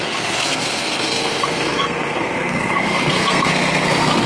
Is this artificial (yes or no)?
yes